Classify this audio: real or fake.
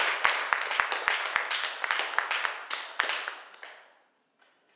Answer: real